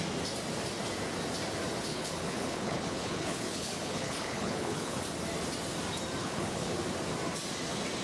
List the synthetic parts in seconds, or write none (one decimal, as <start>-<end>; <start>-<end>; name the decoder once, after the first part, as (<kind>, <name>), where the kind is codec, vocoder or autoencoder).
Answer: 1.9-5.0 (codec, HILCodec); 6.2-6.8